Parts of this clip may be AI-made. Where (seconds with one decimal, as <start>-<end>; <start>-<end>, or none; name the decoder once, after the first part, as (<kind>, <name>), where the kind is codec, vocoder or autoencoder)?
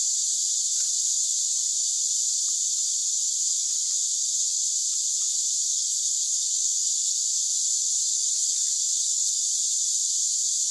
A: 5.7-7.2 (codec, DAC); 8.1-9.5